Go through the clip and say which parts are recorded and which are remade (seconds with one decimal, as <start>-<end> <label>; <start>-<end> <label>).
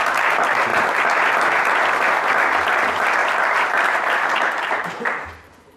0.0-0.7 recorded; 0.7-1.6 remade; 1.6-3.2 recorded; 3.2-5.8 remade